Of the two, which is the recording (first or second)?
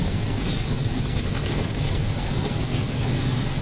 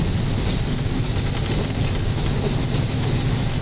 second